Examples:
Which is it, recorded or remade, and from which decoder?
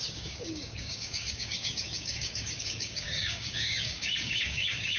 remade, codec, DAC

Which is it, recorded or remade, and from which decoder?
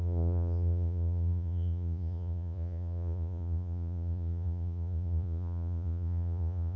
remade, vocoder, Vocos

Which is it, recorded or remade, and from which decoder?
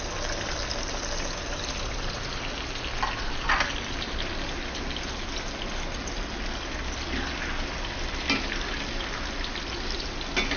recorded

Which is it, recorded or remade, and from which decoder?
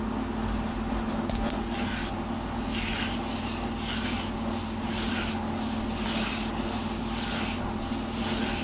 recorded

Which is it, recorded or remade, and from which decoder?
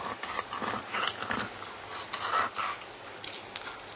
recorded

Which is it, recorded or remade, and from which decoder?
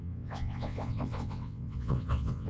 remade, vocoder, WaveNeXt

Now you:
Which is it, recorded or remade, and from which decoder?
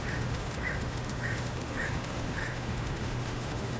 remade, autoencoder, DAC-VAE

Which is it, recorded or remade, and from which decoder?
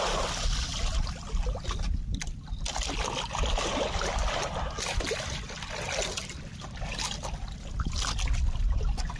recorded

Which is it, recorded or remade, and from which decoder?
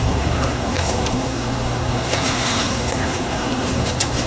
remade, codec, SNAC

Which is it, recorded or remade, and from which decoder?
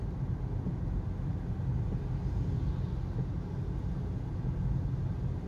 recorded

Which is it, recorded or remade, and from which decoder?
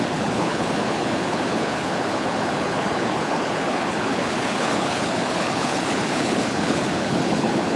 remade, codec, HILCodec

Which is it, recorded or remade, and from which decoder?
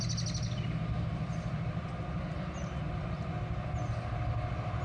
recorded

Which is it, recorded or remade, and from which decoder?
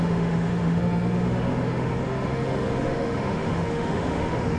remade, autoencoder, DAC-VAE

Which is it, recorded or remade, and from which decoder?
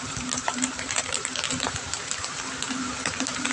remade, vocoder, BigVGAN v2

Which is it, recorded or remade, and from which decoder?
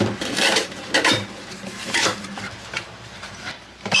remade, vocoder, BigVGAN v2